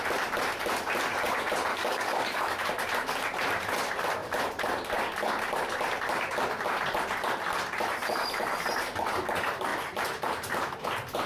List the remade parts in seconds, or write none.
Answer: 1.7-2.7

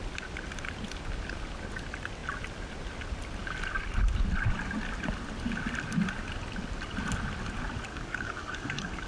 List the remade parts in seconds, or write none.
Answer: 7.9-9.1

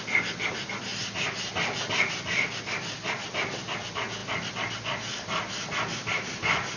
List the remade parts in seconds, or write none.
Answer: none

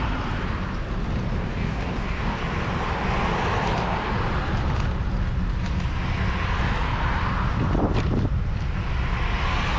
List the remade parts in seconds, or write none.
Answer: 1.5-2.4